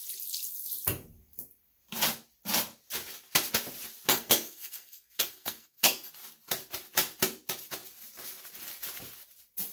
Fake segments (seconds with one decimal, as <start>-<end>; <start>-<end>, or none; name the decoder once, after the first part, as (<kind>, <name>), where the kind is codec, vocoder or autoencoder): 4.1-6.1 (codec, SNAC)